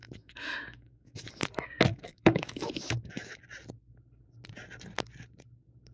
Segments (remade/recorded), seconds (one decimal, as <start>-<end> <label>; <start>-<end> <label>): 0.0-1.3 remade; 1.3-1.9 recorded; 1.9-3.4 remade; 3.4-5.9 recorded